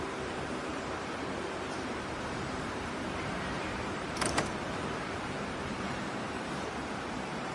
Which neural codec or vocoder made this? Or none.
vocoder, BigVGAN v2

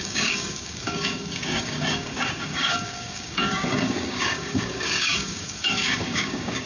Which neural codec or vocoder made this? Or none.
codec, DAC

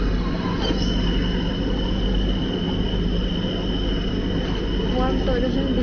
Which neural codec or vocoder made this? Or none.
none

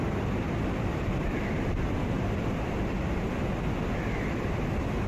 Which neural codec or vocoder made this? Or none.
vocoder, BigVGAN v2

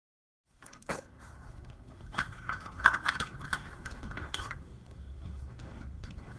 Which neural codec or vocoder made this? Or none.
codec, SNAC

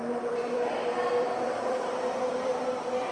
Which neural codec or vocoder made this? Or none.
vocoder, BigVGAN v2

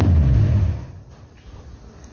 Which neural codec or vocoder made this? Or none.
none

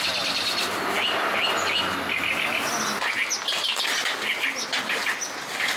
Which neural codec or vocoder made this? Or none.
none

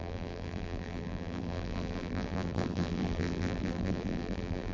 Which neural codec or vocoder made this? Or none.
vocoder, BigVGAN v2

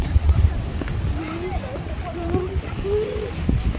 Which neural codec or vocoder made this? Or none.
none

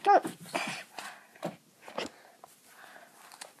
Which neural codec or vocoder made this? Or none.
none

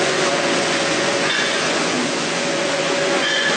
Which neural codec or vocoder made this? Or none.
vocoder, Vocos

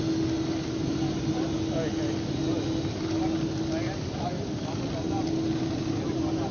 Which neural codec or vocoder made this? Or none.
none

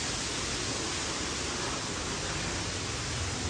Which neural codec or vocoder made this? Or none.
none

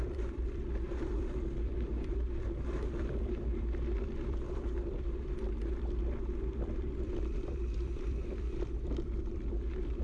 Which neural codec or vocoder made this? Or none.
vocoder, BigVGAN v2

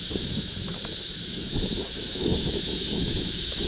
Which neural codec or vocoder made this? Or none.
autoencoder, DAC-VAE